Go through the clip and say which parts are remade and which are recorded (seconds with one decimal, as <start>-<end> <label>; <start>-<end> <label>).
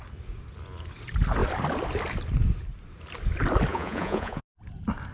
0.0-3.7 recorded; 3.7-4.4 remade; 4.4-5.1 recorded